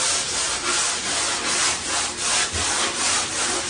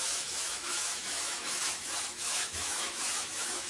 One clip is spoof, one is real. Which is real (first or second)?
first